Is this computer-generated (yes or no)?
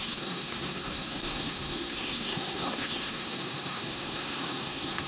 yes